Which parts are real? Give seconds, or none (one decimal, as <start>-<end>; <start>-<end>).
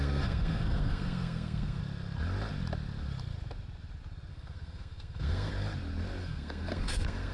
1.8-4.3; 5.5-6.2